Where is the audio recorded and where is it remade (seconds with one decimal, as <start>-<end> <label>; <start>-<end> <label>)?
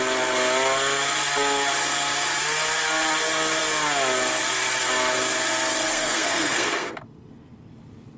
0.0-5.8 recorded; 5.8-6.9 remade; 6.9-8.2 recorded